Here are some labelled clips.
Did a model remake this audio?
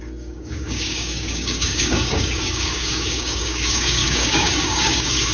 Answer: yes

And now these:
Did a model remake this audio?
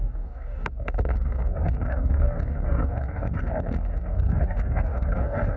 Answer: yes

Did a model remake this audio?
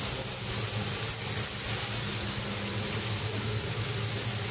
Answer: no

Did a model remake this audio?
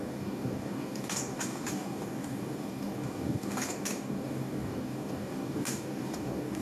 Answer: yes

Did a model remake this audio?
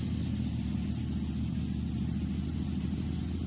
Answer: no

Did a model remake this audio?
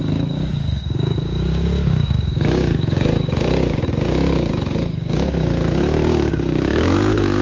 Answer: yes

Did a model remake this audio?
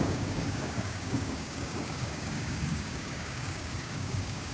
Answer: yes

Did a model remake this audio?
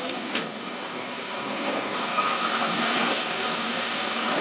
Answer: yes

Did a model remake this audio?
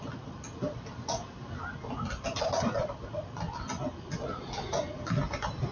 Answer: no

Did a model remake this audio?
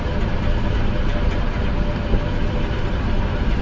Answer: no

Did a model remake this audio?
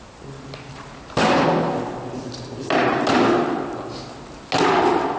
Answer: no